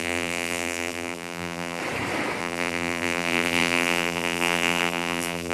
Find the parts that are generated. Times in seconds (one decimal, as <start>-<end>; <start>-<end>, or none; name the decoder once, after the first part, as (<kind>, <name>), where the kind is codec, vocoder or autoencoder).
0.0-1.8 (vocoder, BigVGAN v2); 2.4-5.5